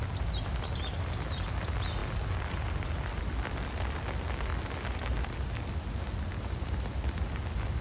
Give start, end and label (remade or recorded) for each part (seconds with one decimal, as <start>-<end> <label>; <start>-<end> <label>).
0.0-7.8 recorded